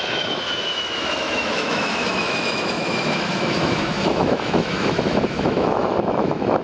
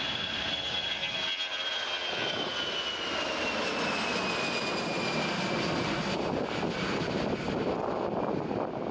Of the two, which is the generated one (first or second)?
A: first